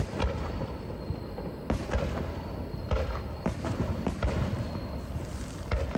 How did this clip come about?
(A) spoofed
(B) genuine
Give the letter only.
B